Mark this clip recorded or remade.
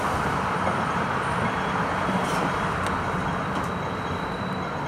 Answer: remade